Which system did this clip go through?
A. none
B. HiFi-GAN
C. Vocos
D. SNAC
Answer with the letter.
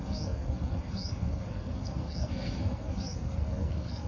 D